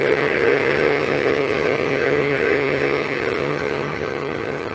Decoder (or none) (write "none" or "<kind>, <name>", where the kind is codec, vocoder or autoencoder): vocoder, HiFi-GAN